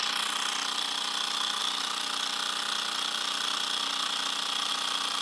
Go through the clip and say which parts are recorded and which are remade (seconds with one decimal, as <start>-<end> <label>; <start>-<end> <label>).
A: 0.0-5.2 recorded